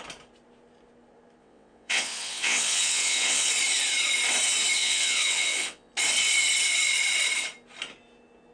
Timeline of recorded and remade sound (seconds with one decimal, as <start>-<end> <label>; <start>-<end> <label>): 0.0-1.4 recorded; 1.4-3.5 remade; 3.5-4.8 recorded; 4.8-5.9 remade; 5.9-8.5 recorded